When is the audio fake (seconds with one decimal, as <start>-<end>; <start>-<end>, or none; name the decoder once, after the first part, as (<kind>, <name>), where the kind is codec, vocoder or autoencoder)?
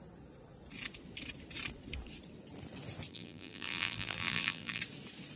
3.1-4.8 (vocoder, BigVGAN v2)